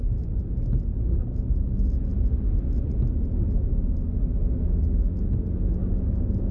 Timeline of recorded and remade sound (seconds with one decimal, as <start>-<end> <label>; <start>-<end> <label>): 0.0-6.5 recorded